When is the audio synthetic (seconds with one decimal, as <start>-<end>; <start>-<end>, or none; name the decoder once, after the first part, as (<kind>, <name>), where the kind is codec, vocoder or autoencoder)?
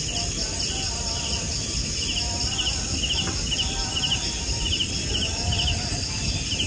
none